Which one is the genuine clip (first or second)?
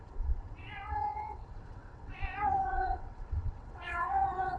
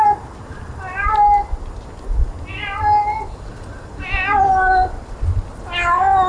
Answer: second